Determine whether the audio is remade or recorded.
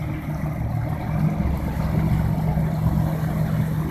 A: recorded